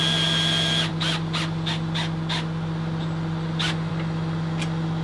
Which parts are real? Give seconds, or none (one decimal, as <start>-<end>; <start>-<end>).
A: 0.0-5.0